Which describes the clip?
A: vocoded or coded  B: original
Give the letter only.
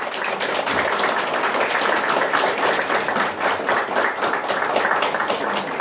B